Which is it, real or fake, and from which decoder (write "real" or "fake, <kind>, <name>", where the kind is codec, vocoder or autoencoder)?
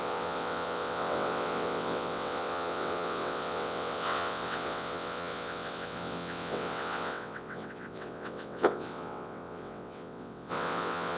fake, vocoder, WaveNeXt